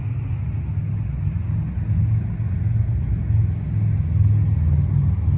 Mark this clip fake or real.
real